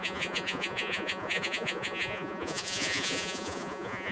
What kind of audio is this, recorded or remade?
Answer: remade